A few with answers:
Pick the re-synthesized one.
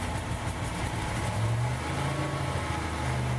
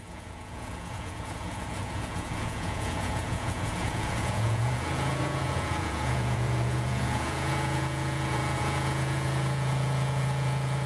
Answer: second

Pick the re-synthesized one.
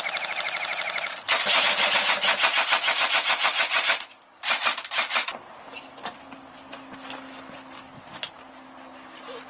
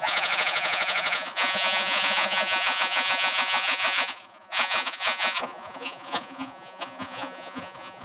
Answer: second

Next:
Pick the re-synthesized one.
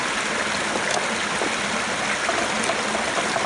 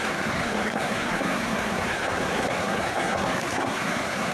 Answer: second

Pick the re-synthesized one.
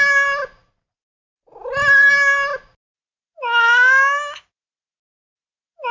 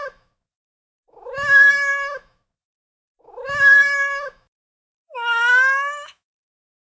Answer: second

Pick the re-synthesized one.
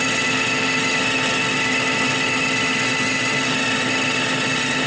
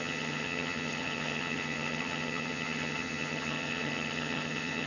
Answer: second